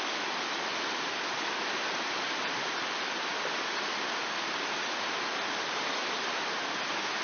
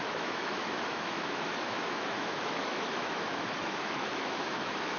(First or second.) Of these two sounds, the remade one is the second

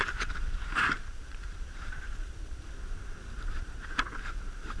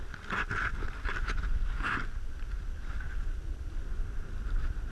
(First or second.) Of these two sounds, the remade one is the first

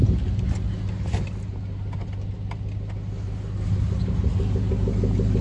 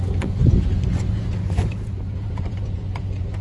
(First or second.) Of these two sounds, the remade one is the second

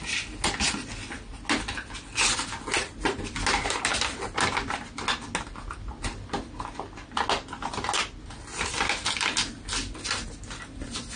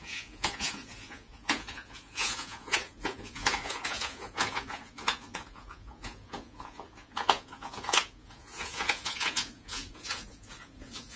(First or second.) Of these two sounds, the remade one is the second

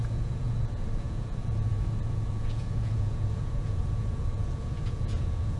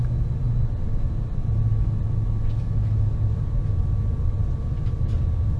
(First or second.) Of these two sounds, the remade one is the first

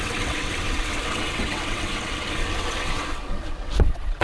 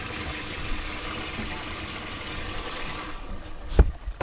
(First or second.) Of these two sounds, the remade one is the first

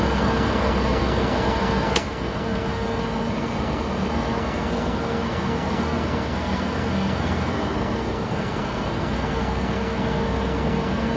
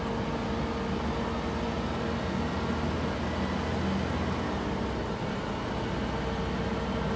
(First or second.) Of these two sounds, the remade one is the first